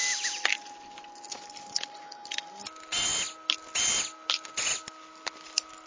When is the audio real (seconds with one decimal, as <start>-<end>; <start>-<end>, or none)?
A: 0.0-5.9